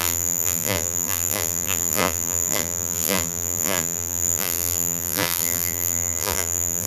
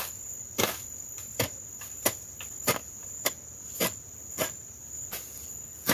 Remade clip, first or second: first